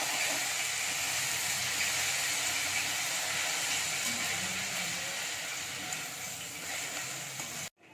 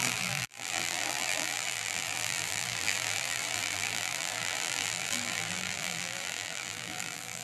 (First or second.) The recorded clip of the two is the first